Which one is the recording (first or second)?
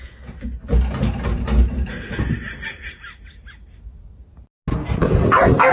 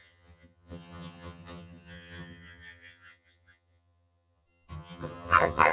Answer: first